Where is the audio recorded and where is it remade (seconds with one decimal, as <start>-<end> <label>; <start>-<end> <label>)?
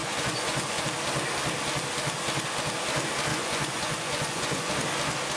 0.0-0.8 remade; 0.8-3.3 recorded; 3.3-4.7 remade; 4.7-5.4 recorded